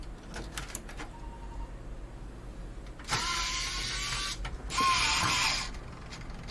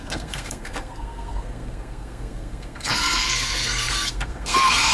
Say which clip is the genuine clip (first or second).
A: first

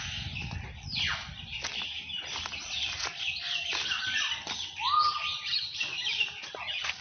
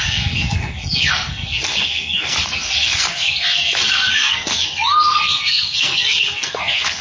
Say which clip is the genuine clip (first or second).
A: first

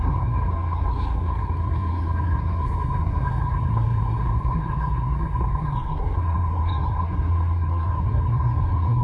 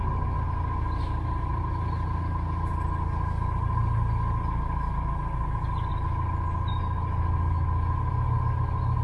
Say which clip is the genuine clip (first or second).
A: second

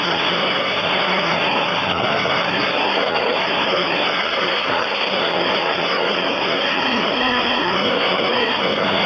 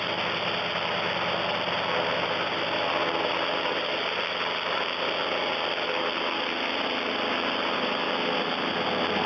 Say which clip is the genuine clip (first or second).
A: second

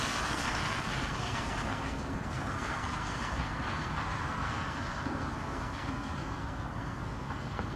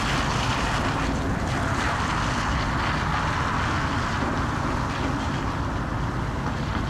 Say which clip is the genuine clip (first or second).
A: second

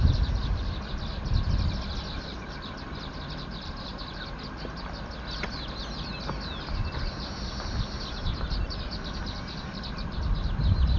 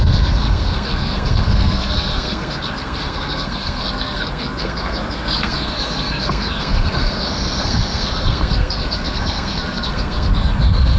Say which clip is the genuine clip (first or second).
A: first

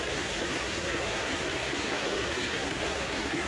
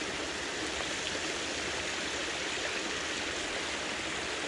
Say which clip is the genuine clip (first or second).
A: second